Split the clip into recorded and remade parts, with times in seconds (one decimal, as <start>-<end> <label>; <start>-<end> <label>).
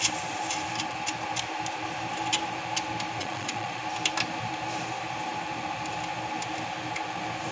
0.0-3.2 recorded; 3.2-3.8 remade; 3.8-7.5 recorded